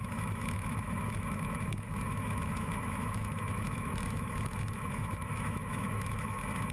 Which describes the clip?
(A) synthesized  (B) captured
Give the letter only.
A